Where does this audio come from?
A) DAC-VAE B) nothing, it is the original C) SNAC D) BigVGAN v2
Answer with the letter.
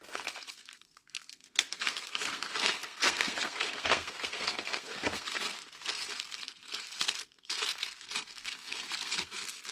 C